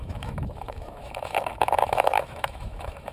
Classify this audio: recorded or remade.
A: remade